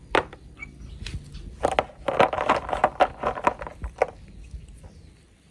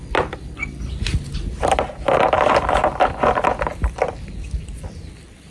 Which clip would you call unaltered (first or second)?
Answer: first